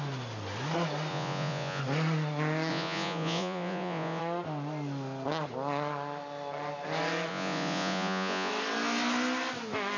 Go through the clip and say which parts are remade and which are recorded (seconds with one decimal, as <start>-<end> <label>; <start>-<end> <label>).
0.0-1.1 recorded; 1.1-1.8 remade; 1.8-2.7 recorded; 2.7-4.2 remade; 4.2-7.3 recorded; 7.3-8.5 remade; 8.5-10.0 recorded